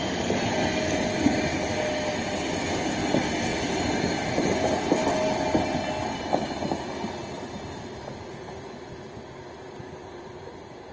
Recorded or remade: recorded